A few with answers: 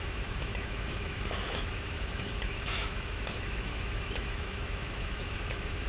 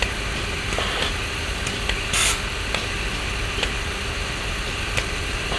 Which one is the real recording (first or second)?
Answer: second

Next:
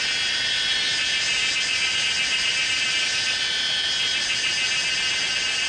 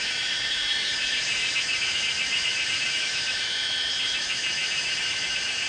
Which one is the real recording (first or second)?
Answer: first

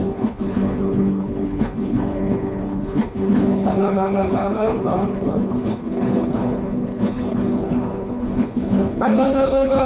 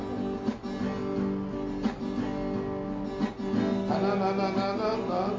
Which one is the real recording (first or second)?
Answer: second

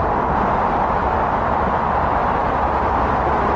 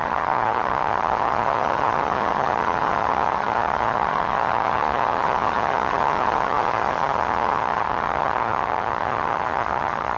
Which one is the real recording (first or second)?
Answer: first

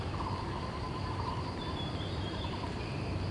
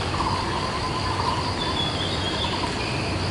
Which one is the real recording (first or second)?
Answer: second